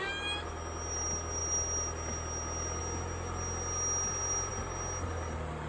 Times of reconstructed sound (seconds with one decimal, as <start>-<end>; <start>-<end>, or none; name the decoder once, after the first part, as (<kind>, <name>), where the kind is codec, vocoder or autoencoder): none